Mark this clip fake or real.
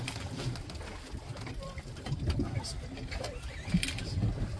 real